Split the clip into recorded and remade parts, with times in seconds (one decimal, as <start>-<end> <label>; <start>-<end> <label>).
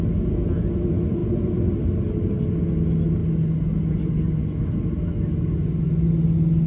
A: 0.0-6.7 recorded